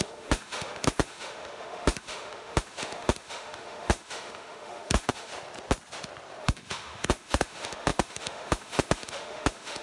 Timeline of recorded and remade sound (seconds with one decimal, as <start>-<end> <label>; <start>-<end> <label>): 0.0-5.3 remade; 5.3-6.4 recorded; 6.4-9.8 remade